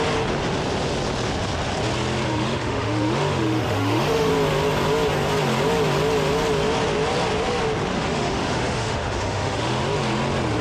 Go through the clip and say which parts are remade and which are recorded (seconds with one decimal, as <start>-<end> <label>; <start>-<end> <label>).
0.0-2.3 recorded; 2.3-4.3 remade; 4.3-7.9 recorded; 7.9-9.8 remade; 9.8-10.6 recorded